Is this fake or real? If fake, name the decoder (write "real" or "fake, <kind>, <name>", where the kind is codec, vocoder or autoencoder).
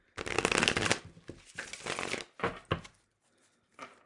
real